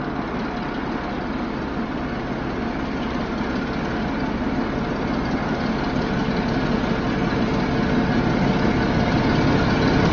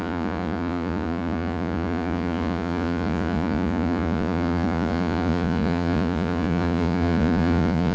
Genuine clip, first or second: first